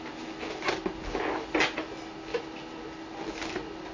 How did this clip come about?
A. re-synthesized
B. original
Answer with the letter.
B